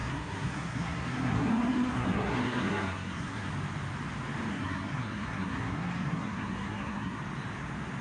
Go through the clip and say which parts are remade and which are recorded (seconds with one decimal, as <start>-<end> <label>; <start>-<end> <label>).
0.0-3.5 remade; 3.5-4.5 recorded; 4.5-7.2 remade; 7.2-8.0 recorded